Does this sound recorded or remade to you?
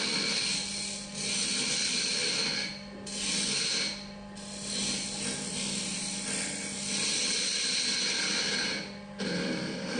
recorded